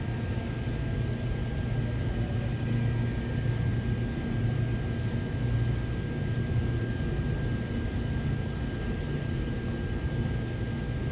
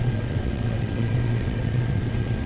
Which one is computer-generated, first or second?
second